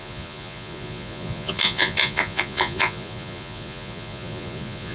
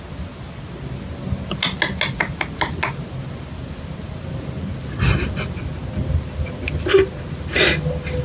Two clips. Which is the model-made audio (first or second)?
first